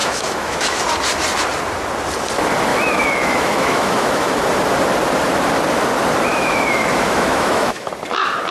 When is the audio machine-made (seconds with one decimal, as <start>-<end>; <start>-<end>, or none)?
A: 0.0-0.8; 2.7-4.4; 6.3-7.9